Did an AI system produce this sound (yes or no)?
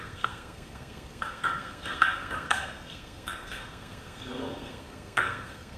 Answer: yes